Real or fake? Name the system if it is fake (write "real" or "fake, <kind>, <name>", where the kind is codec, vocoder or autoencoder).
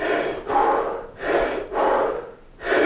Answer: real